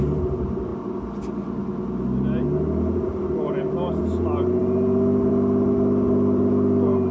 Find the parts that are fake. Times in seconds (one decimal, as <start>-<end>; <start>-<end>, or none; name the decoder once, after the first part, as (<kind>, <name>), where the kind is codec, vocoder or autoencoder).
none